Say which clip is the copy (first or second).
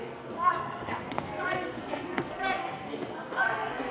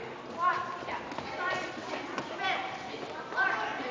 first